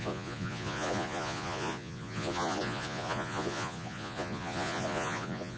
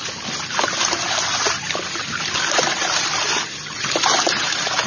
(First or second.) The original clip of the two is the second